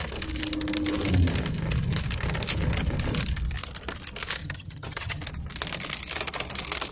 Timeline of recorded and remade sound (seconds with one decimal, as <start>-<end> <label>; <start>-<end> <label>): 0.0-4.4 recorded; 4.4-5.2 remade; 5.2-6.9 recorded